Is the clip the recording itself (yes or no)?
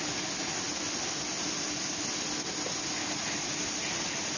yes